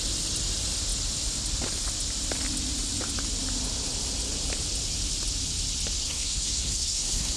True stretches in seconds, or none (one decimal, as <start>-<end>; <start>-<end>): 0.0-6.0